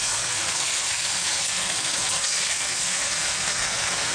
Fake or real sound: fake